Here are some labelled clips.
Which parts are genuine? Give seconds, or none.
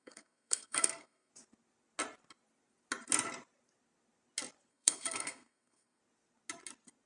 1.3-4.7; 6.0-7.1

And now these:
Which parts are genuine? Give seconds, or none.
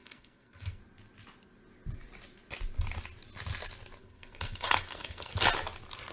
0.8-4.0; 5.3-6.1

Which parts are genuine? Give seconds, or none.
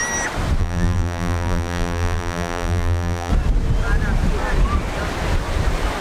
0.0-0.6; 3.3-6.0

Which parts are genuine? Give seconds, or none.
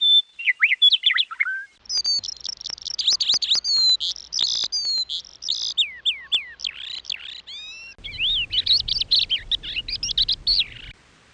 0.0-11.3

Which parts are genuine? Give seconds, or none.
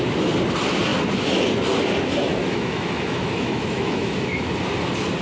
0.0-2.4; 4.5-5.2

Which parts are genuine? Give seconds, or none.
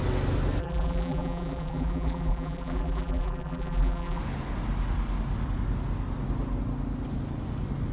0.0-0.6; 4.2-7.9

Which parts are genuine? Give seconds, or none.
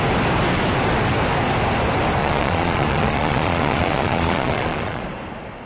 0.0-2.2; 5.0-5.7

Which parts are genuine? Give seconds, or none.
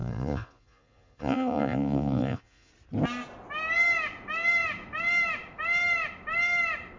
2.7-7.0